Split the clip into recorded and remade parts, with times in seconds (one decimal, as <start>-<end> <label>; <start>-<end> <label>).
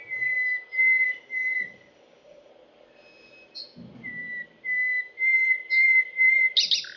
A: 0.0-0.8 recorded; 0.8-2.5 remade; 2.5-7.0 recorded